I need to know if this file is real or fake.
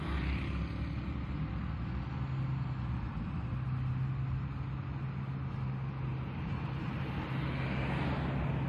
real